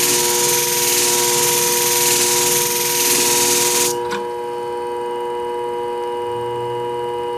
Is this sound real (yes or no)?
yes